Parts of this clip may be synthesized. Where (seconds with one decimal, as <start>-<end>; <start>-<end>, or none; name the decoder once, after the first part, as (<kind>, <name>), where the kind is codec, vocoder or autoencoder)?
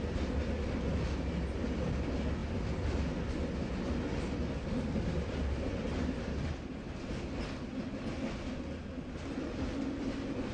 none